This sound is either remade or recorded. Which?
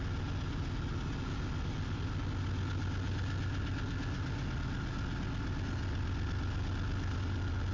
recorded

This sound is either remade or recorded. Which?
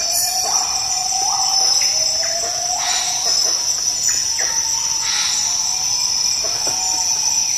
recorded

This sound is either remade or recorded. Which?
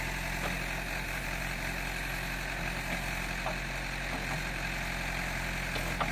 recorded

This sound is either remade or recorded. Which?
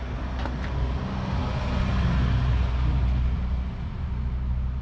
recorded